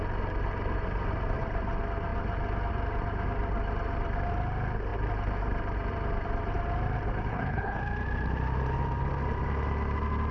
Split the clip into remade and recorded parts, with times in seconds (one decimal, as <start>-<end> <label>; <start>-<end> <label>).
0.0-7.3 recorded; 7.3-7.8 remade; 7.8-10.3 recorded